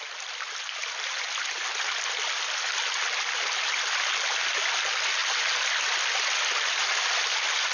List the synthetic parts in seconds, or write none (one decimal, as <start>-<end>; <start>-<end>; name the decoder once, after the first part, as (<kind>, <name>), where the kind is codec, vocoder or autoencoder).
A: none